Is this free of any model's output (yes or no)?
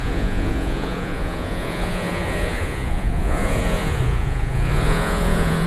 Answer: no